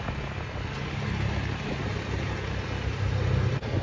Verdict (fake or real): real